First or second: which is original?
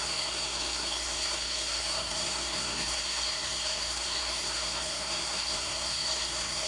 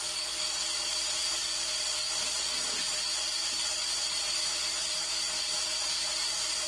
second